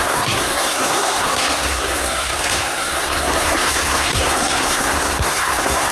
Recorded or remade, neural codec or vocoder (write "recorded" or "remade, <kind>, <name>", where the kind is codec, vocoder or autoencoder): remade, codec, SNAC